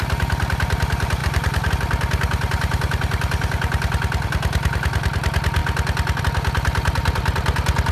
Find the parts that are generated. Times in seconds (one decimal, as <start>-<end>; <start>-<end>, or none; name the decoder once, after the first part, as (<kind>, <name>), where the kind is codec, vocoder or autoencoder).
1.2-1.7 (vocoder, BigVGAN v2)